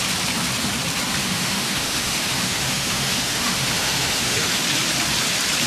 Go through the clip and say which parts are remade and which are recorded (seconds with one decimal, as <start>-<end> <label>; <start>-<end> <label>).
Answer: 0.0-1.2 recorded; 1.2-4.6 remade; 4.6-5.7 recorded